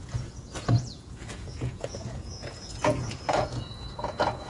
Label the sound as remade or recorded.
remade